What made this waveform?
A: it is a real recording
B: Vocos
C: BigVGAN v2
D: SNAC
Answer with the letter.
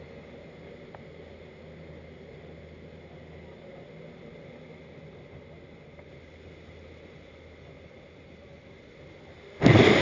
A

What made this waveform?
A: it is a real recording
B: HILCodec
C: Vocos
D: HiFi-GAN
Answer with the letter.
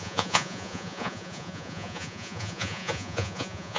C